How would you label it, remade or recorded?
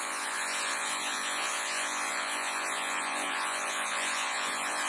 remade